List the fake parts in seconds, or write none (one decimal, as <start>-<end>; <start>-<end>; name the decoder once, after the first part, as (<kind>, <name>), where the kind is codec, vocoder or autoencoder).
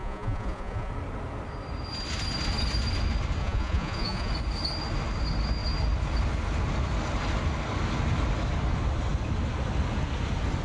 0.0-0.9 (vocoder, Vocos); 3.4-4.3